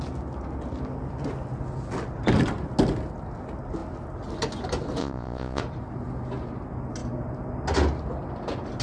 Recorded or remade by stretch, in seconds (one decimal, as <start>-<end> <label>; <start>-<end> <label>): 0.0-5.0 recorded; 5.0-5.6 remade; 5.6-8.8 recorded